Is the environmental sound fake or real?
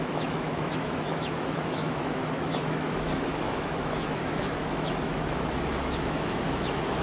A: fake